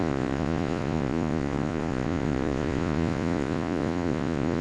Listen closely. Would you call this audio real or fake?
fake